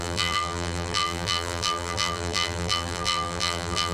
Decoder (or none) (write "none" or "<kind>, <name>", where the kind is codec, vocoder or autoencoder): vocoder, BigVGAN v2